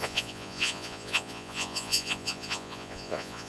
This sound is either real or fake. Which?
fake